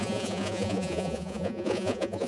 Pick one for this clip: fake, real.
fake